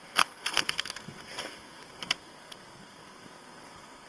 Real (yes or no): no